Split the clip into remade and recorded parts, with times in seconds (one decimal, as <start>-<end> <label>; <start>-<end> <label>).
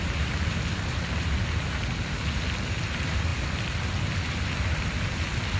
0.0-5.6 recorded